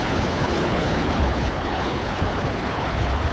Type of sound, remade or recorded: remade